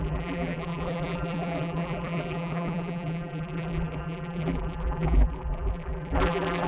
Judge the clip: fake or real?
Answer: fake